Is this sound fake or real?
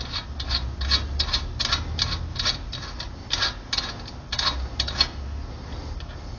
real